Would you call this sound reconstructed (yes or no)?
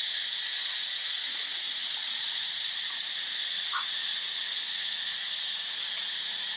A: yes